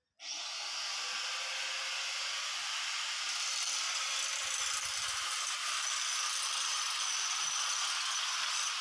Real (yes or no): yes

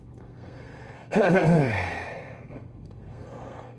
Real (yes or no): no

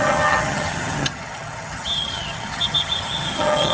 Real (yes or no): no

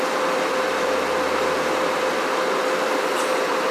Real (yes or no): no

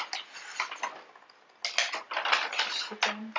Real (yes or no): yes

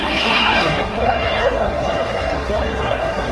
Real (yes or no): no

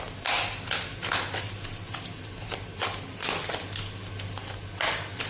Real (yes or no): yes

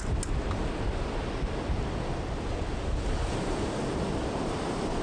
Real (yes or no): yes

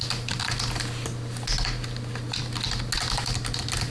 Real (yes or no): yes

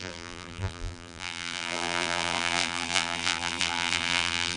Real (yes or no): no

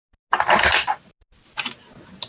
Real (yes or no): yes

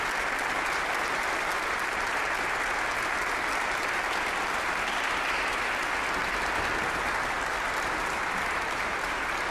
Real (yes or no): yes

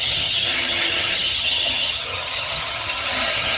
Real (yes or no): no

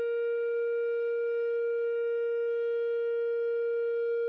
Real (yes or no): no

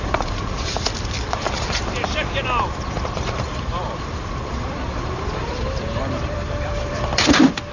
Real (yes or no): no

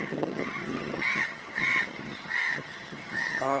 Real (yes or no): no